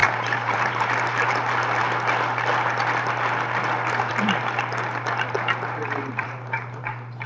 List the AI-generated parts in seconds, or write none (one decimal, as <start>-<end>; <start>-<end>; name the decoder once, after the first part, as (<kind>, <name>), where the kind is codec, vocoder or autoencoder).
0.0-0.9 (vocoder, BigVGAN v2); 5.8-6.8